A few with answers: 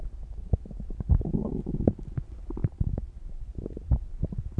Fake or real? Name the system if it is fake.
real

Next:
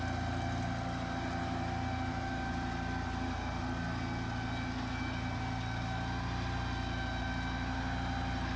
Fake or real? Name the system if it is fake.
real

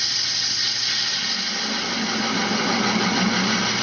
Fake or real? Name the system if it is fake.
real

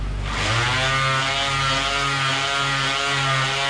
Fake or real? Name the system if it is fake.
real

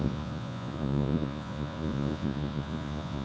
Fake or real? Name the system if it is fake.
fake, vocoder, Vocos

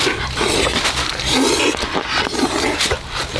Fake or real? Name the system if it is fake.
real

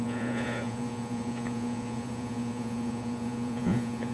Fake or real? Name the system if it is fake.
fake, vocoder, Vocos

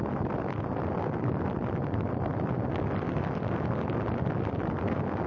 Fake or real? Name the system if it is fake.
real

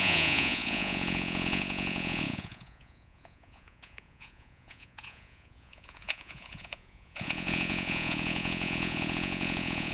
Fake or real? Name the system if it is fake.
fake, vocoder, Vocos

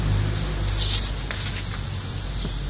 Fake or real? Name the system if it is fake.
real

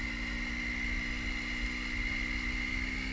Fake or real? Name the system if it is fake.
real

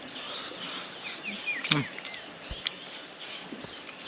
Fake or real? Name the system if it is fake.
real